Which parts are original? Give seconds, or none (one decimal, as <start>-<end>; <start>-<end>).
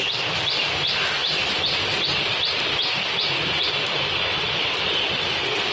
0.0-5.7